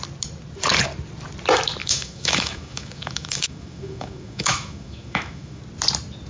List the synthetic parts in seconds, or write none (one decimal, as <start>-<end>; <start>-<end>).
1.8-5.6